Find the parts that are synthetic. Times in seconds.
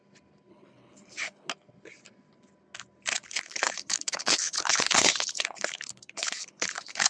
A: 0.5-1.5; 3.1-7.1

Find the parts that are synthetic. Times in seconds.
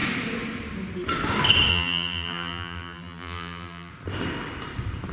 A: 1.7-3.9